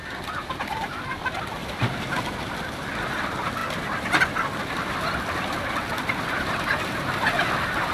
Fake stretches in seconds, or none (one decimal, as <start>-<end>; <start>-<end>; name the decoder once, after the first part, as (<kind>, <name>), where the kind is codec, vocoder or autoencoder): 0.4-1.2 (vocoder, BigVGAN v2)